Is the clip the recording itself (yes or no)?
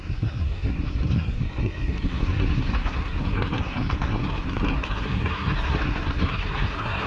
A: no